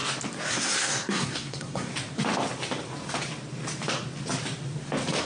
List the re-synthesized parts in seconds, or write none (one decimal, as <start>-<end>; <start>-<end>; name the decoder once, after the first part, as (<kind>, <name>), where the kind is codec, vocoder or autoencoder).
0.5-1.9 (codec, SNAC)